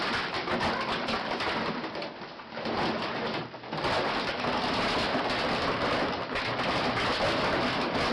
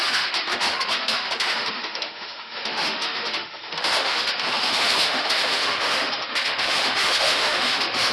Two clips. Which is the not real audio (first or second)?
second